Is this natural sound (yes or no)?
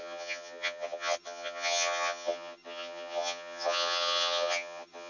no